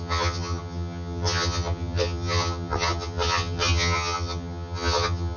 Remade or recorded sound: remade